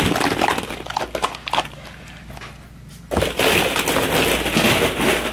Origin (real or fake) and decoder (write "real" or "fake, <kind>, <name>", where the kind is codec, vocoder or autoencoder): real